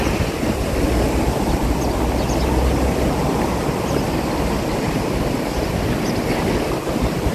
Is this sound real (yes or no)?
yes